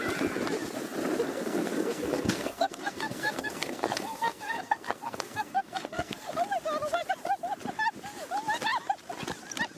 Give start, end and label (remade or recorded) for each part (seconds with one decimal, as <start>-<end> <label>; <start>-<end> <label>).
0.0-1.3 recorded; 1.3-6.3 remade; 6.3-9.8 recorded